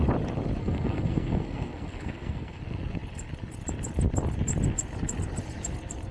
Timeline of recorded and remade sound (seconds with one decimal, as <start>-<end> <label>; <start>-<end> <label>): 0.0-0.6 recorded; 0.6-2.6 remade; 2.6-6.1 recorded